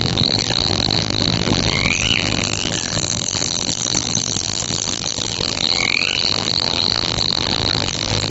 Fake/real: fake